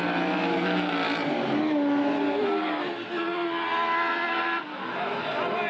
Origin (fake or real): real